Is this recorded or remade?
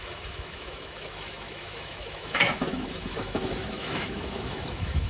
remade